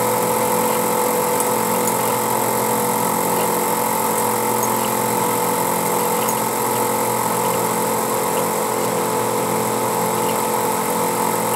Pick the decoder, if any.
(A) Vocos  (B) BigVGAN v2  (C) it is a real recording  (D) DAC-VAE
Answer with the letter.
C